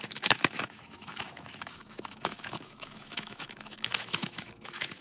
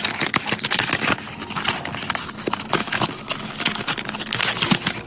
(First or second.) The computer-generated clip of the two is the first